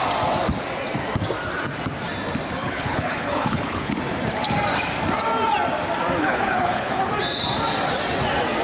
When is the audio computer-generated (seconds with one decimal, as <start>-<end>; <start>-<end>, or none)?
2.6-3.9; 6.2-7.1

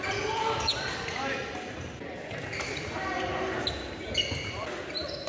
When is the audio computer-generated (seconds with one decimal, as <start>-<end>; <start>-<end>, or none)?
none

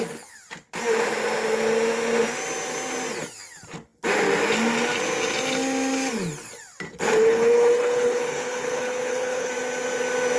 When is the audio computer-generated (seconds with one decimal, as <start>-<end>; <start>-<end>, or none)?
7.2-9.5